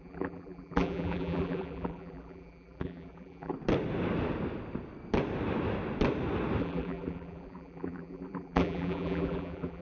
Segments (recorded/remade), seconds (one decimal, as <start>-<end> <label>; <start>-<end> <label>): 0.0-3.5 remade; 3.5-6.6 recorded; 6.6-9.8 remade